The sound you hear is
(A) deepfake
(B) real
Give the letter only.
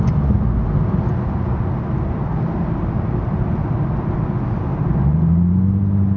B